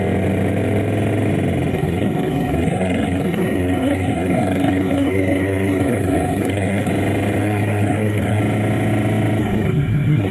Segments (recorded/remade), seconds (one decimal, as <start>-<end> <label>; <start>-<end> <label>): 0.0-1.7 recorded; 1.7-6.9 remade; 6.9-7.4 recorded; 7.4-8.4 remade; 8.4-9.4 recorded; 9.4-10.3 remade